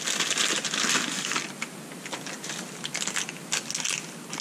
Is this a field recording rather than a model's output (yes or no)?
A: yes